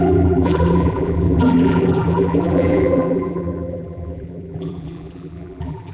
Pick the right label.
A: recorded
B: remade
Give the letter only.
B